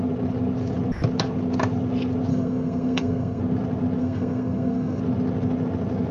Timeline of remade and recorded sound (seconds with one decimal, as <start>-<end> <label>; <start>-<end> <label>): 0.0-2.3 recorded; 2.3-3.4 remade; 3.4-4.0 recorded; 4.0-5.0 remade; 5.0-6.1 recorded